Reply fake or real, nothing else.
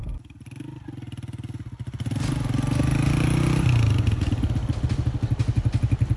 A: real